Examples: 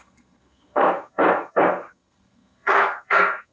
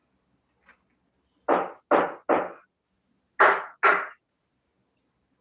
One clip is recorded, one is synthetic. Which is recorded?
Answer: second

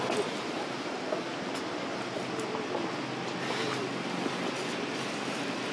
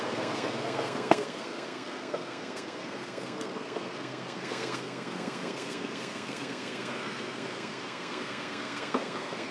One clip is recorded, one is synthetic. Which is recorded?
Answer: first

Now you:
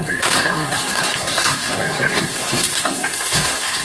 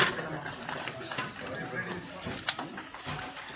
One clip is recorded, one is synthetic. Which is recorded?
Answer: second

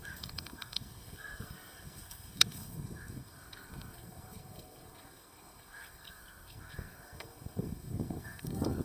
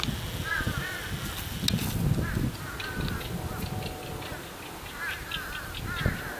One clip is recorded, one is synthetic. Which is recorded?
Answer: second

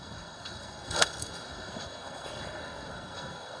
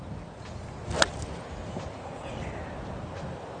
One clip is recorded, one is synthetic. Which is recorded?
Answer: second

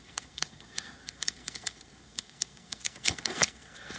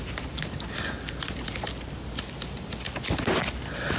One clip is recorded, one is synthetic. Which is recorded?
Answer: second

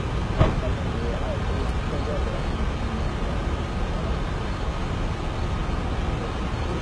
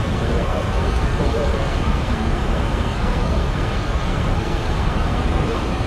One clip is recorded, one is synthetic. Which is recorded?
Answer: first